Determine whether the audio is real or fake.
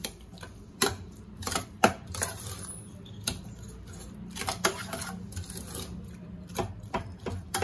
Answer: fake